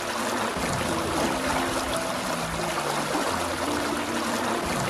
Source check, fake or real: real